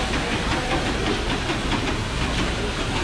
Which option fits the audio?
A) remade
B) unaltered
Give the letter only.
B